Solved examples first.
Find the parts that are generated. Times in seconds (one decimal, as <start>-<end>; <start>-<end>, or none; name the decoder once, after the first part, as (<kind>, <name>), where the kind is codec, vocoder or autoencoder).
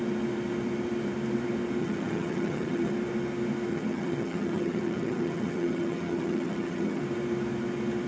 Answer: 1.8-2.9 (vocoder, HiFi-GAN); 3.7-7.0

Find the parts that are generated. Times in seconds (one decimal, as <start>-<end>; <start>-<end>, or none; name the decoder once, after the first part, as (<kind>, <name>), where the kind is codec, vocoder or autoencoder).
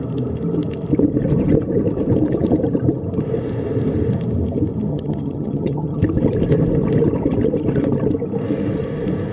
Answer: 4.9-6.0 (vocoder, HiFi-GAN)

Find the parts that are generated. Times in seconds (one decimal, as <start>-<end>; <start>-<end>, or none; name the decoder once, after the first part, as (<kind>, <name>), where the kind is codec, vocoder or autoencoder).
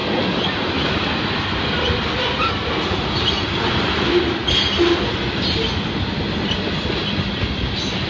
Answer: none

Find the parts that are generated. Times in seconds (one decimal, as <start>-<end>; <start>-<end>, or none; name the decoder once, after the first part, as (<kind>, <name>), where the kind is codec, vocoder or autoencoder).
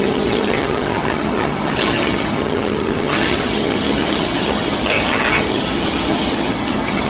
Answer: 0.0-7.1 (vocoder, HiFi-GAN)